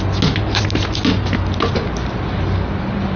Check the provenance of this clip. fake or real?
real